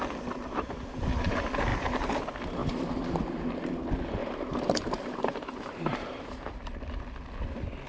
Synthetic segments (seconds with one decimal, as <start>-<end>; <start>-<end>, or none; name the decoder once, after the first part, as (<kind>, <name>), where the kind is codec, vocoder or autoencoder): 1.7-2.2 (vocoder, BigVGAN v2); 2.6-3.7; 4.2-6.6